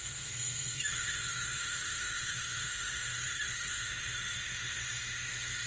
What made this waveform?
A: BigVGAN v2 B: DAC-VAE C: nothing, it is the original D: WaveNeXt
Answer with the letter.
B